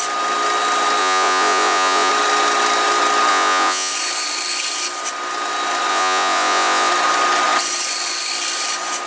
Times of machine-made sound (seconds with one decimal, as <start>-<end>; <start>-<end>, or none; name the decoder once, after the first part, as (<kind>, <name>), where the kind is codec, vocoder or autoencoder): 1.0-2.1 (vocoder, Vocos); 3.3-3.9; 5.9-6.9